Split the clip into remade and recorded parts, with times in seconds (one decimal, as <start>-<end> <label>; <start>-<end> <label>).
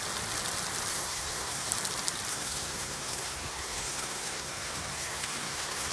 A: 0.0-0.9 recorded; 0.9-1.7 remade; 1.7-2.3 recorded; 2.3-5.9 remade